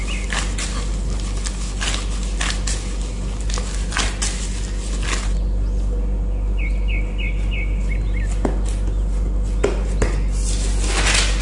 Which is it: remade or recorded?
recorded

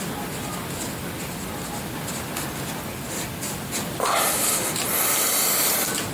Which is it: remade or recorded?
recorded